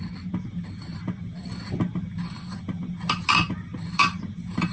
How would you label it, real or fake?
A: real